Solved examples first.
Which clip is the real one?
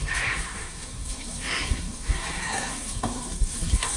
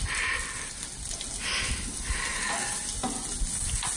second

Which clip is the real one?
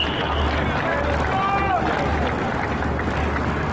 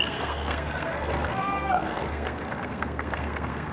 first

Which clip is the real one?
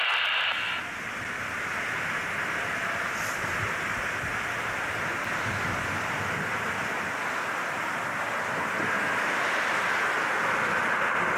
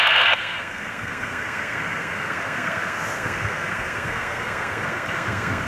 first